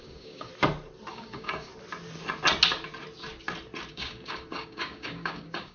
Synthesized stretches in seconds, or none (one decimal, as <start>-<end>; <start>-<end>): 0.0-0.5; 1.1-1.7; 3.9-5.7